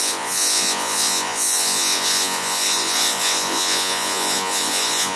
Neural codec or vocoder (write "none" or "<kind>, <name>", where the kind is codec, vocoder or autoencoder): vocoder, Vocos